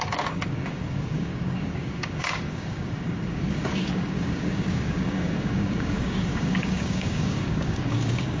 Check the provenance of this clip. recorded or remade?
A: remade